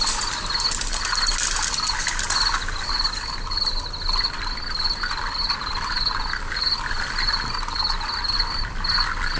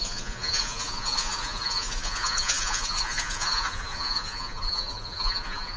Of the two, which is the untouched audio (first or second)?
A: first